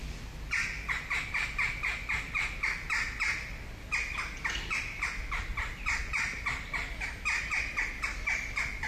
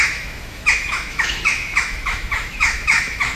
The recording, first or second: first